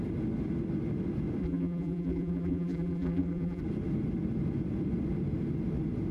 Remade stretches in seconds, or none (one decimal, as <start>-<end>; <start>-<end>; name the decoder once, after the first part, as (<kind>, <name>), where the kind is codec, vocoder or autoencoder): 1.4-3.6 (vocoder, BigVGAN v2)